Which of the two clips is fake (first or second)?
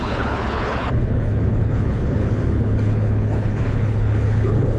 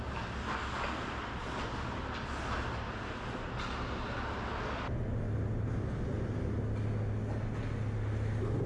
first